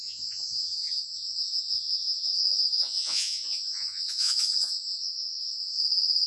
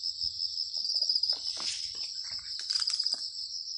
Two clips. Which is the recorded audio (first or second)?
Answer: second